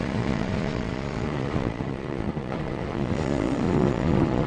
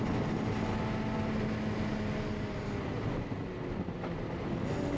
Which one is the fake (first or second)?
first